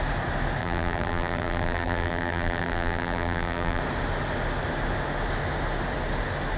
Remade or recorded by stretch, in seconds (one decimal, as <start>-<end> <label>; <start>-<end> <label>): 0.0-0.6 recorded; 0.6-3.8 remade; 3.8-6.6 recorded